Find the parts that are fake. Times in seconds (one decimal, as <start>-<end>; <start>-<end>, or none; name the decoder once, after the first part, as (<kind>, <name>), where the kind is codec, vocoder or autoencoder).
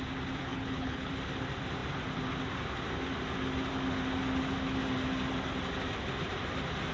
0.5-1.1 (codec, HILCodec)